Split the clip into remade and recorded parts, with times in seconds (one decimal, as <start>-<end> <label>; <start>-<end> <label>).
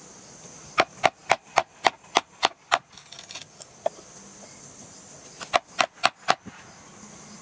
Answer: 0.0-7.4 recorded